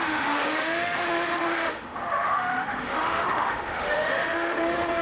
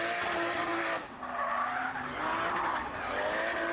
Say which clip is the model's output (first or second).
first